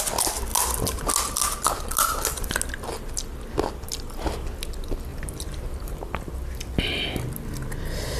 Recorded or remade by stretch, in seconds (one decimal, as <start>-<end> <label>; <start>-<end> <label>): 0.0-5.1 recorded; 5.1-6.3 remade; 6.3-8.2 recorded